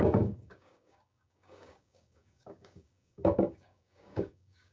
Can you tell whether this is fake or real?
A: fake